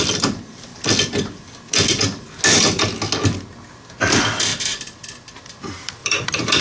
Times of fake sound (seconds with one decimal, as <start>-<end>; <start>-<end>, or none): 0.0-0.7; 4.0-6.6